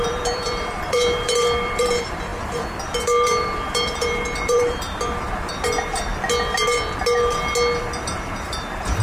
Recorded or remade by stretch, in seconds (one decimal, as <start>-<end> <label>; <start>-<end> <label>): 0.0-6.1 remade; 6.1-7.8 recorded; 7.8-9.0 remade